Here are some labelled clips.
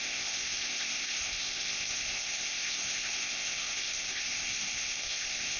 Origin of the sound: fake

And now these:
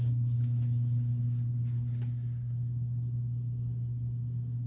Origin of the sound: real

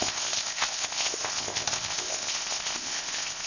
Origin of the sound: fake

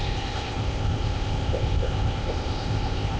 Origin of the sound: fake